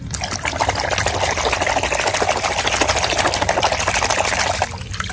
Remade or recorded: recorded